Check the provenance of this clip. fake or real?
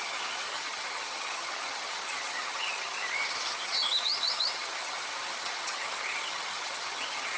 fake